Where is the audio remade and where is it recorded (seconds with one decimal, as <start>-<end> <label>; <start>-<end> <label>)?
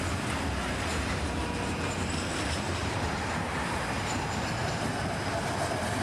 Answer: 0.0-0.9 recorded; 0.9-1.7 remade; 1.7-2.8 recorded; 2.8-4.0 remade; 4.0-4.6 recorded; 4.6-5.5 remade; 5.5-6.0 recorded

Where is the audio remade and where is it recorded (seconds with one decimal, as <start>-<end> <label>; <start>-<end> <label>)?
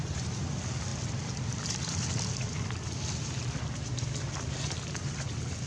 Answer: 0.0-5.7 recorded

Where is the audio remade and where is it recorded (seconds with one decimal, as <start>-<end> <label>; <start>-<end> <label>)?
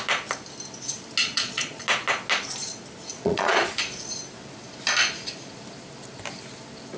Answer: 0.0-1.2 recorded; 1.2-1.8 remade; 1.8-3.1 recorded; 3.1-3.7 remade; 3.7-7.0 recorded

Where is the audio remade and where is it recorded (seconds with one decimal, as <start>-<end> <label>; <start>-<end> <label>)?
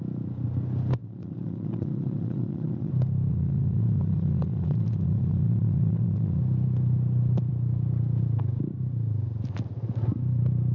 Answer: 0.0-1.0 recorded; 1.0-2.9 remade; 2.9-3.3 recorded; 3.3-6.4 remade; 6.4-10.7 recorded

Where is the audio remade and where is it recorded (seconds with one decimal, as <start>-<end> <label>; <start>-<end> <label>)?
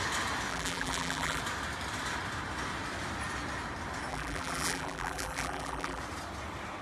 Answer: 0.0-0.5 recorded; 0.5-1.4 remade; 1.4-4.1 recorded; 4.1-6.0 remade; 6.0-6.8 recorded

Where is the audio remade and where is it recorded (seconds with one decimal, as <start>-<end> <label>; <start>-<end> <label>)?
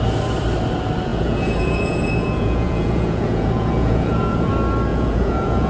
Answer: 0.0-1.1 recorded; 1.1-4.5 remade; 4.5-4.9 recorded; 4.9-5.7 remade